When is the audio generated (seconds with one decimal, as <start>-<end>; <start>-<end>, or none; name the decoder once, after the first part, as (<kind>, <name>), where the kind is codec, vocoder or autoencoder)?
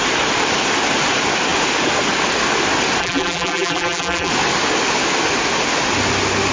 3.0-4.3 (vocoder, BigVGAN v2)